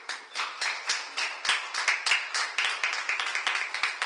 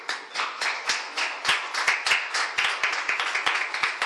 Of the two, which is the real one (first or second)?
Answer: first